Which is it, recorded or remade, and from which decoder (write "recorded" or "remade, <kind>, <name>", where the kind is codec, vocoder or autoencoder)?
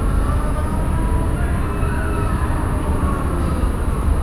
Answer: recorded